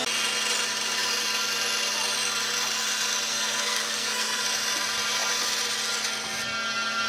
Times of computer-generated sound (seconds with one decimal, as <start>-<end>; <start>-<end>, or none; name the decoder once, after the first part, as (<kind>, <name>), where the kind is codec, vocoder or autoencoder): 3.3-4.4 (codec, SNAC)